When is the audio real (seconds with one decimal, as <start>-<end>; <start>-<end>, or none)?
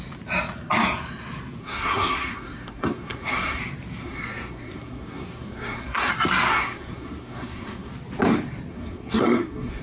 0.0-1.6; 3.6-4.0; 6.1-6.5; 7.9-8.7